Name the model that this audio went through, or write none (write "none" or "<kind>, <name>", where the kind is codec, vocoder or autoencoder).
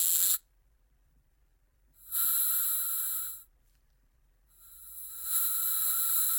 vocoder, BigVGAN v2